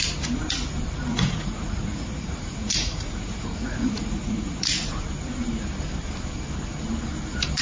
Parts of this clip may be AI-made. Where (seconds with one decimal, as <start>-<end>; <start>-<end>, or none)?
1.1-5.0